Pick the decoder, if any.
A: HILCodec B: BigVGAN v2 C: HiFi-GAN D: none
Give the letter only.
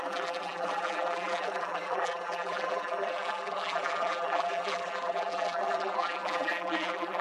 B